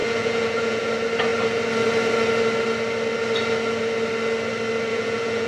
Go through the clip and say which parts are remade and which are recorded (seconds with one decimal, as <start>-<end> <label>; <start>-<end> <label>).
0.0-0.9 remade; 0.9-4.9 recorded; 4.9-5.5 remade